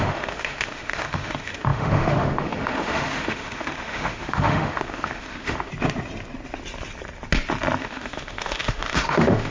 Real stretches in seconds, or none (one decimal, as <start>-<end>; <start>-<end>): 5.7-7.8